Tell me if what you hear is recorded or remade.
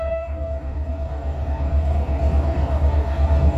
remade